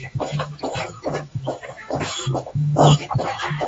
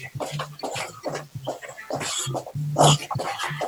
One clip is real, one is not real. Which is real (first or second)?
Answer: second